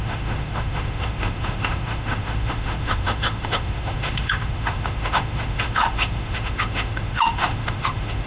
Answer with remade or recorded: remade